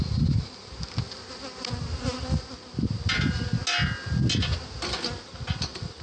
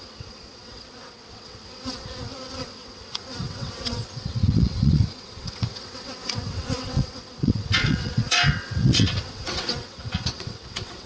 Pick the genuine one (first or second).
first